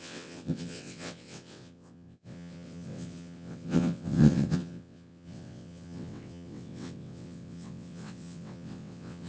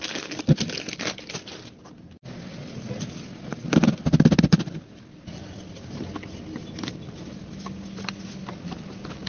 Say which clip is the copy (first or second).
first